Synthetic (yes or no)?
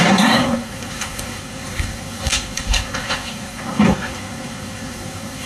yes